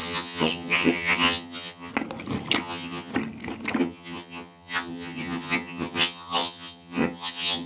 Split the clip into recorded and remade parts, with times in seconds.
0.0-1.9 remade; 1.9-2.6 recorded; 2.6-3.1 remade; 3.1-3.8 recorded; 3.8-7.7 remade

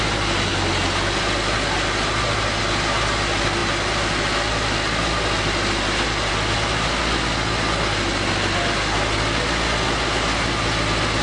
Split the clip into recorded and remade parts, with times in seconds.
0.0-11.2 recorded

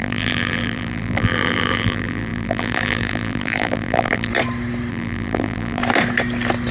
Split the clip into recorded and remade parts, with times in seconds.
0.0-4.3 remade; 4.3-4.9 recorded; 4.9-5.8 remade; 5.8-6.7 recorded

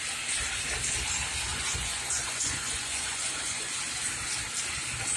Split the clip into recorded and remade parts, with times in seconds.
0.0-1.5 recorded; 1.5-3.8 remade; 3.8-5.2 recorded

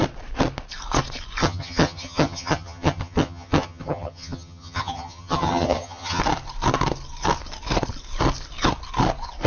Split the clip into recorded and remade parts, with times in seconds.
0.0-1.4 recorded; 1.4-6.2 remade; 6.2-9.5 recorded

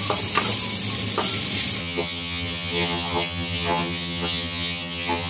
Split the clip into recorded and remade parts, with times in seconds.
0.0-1.8 recorded; 1.8-5.3 remade

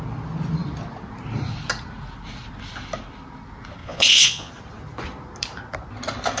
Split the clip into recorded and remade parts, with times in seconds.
0.0-3.8 recorded; 3.8-4.5 remade; 4.5-6.4 recorded